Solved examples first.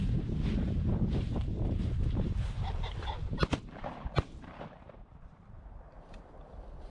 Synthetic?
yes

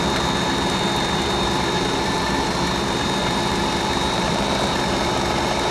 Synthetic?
yes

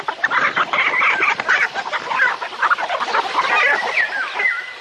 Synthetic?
yes